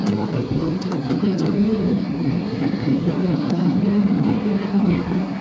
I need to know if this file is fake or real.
fake